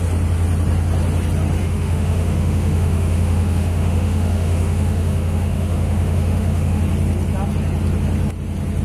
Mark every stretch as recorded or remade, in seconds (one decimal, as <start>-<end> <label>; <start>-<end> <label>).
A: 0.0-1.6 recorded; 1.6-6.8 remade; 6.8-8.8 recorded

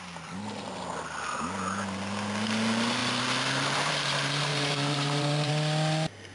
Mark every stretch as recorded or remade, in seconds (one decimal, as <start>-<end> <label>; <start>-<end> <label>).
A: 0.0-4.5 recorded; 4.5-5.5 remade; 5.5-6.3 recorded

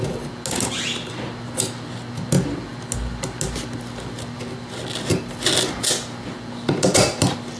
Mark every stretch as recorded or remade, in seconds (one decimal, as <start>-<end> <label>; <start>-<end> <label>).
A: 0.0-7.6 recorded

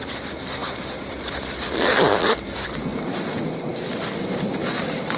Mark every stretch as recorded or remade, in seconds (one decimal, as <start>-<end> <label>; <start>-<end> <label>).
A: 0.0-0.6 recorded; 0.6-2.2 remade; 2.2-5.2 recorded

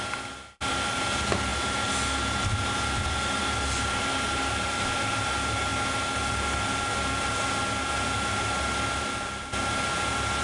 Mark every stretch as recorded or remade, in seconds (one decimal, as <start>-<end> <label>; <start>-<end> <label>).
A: 0.0-10.4 recorded

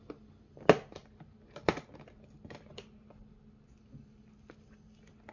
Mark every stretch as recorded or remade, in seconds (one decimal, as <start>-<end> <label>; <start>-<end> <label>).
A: 0.0-5.3 recorded

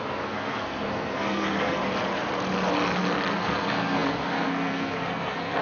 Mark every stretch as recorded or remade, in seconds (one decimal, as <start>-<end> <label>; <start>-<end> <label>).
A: 0.0-1.8 remade; 1.8-3.3 recorded; 3.3-5.6 remade